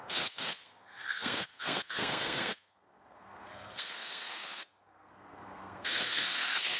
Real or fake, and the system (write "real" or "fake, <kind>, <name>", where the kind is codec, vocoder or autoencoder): fake, codec, SNAC